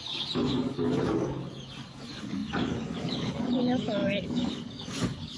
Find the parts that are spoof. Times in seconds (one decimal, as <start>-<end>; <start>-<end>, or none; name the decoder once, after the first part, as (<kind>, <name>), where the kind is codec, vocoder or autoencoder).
0.0-5.4 (codec, DAC)